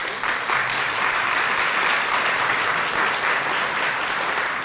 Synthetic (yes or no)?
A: no